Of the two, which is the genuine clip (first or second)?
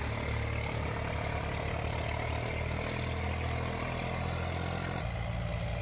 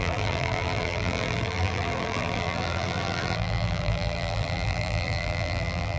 first